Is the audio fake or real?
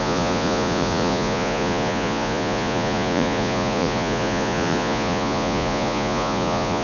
fake